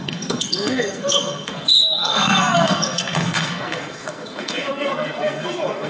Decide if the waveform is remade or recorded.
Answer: remade